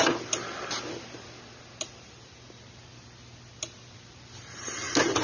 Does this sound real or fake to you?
real